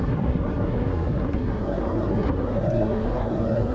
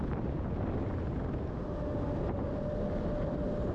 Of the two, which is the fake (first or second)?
first